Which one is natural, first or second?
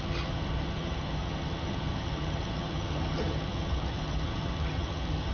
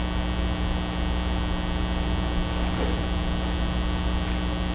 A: second